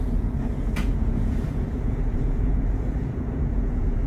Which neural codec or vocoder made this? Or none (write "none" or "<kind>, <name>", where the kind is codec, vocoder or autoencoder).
vocoder, Vocos